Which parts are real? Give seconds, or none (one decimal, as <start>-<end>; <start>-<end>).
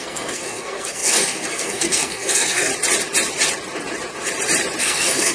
2.7-4.8